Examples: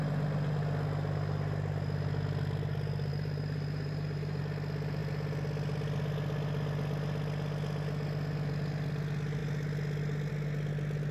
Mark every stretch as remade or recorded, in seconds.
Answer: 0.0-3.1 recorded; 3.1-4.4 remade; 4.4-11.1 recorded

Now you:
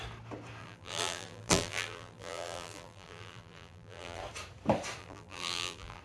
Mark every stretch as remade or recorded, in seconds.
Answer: 0.0-0.6 recorded; 0.6-4.2 remade; 4.2-5.0 recorded; 5.0-6.0 remade

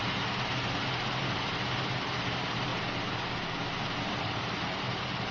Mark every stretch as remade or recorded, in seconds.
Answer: 0.0-2.7 remade; 2.7-4.1 recorded; 4.1-5.3 remade

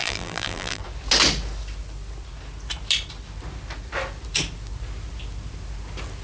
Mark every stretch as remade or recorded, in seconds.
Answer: 0.0-0.8 remade; 0.8-6.2 recorded

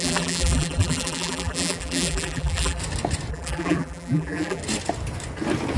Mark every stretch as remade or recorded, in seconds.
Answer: 0.0-2.8 remade; 2.8-3.3 recorded; 3.3-4.6 remade; 4.6-5.8 recorded